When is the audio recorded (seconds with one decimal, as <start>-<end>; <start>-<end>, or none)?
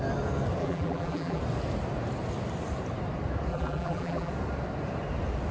0.0-0.6; 1.4-3.5; 4.3-5.5